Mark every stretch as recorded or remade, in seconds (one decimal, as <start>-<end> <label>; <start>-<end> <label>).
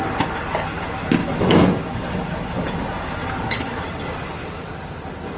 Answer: 0.0-1.2 recorded; 1.2-2.3 remade; 2.3-5.4 recorded